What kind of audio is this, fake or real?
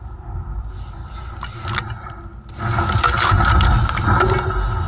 real